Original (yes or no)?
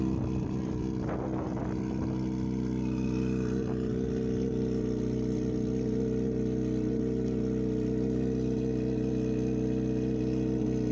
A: yes